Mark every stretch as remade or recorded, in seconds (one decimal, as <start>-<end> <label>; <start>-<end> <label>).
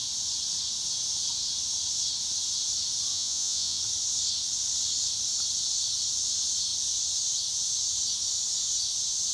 0.0-3.1 recorded; 3.1-3.8 remade; 3.8-9.3 recorded